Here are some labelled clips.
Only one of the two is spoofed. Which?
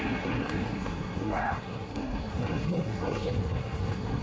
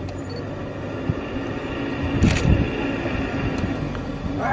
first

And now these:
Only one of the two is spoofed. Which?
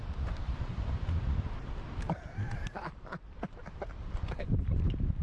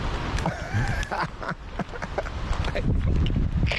first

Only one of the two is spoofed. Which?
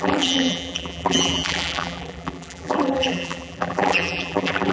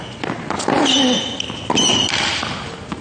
first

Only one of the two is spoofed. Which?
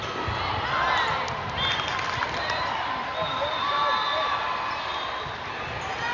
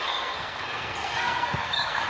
second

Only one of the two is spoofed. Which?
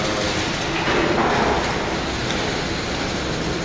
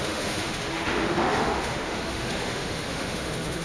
second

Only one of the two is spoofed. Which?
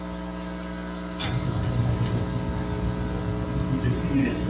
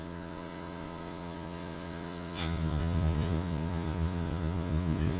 second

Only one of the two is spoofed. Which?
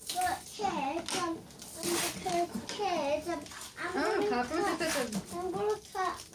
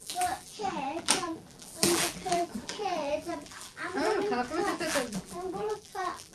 second